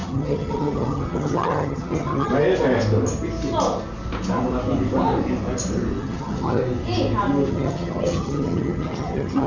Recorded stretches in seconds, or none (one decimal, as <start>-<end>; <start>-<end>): 2.3-6.0; 6.6-7.5

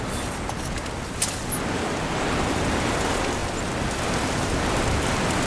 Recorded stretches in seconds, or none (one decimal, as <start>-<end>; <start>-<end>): 0.0-5.5

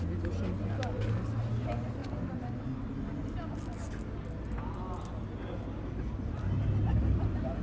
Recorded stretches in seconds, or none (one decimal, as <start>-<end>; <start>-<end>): 0.0-7.6